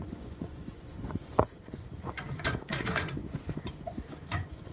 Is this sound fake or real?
fake